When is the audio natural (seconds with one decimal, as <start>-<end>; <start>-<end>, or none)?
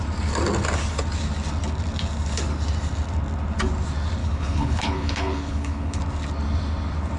0.0-4.2; 6.0-7.2